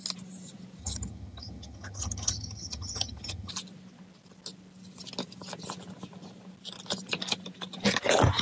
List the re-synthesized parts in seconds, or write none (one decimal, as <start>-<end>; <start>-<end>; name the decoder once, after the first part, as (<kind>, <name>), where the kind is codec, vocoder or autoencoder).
0.8-3.5 (vocoder, HiFi-GAN)